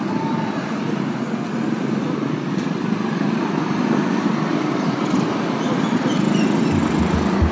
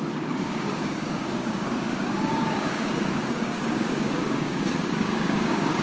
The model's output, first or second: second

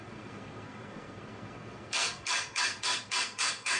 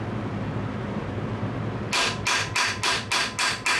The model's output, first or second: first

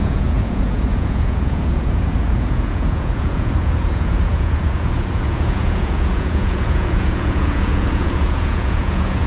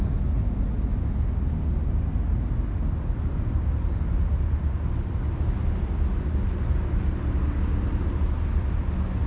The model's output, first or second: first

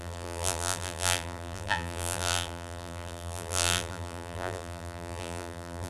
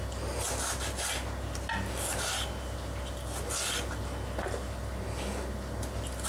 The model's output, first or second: first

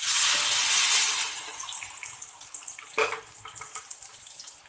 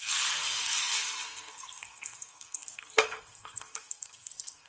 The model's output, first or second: second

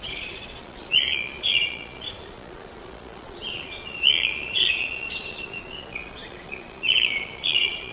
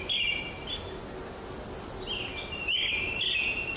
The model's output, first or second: first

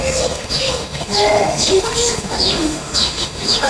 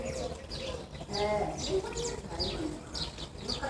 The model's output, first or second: first